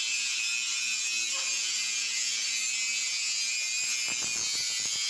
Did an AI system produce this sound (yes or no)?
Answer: no